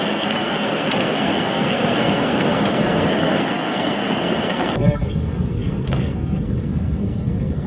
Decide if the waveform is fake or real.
fake